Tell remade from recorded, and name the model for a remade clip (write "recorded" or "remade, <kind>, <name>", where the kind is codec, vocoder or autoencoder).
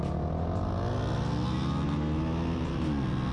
recorded